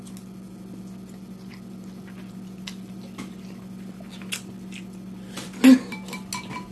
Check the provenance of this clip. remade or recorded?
recorded